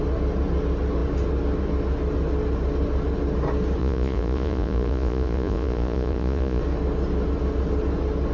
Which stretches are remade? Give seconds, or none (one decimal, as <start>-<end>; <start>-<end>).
3.8-6.6